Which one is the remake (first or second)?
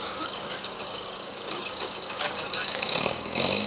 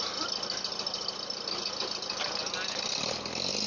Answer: first